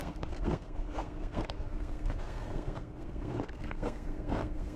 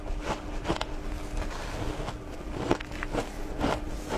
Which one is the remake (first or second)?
first